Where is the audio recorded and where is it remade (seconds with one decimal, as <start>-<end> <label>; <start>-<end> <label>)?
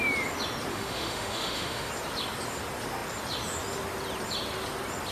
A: 0.0-0.7 recorded; 0.7-1.9 remade; 1.9-5.1 recorded